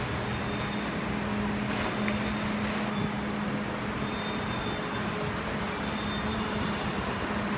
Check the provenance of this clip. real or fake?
real